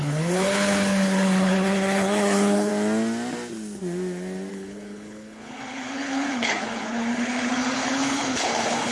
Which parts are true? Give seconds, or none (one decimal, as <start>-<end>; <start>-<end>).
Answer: 2.7-4.5